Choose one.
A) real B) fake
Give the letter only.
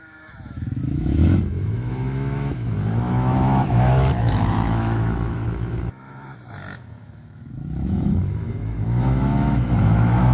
B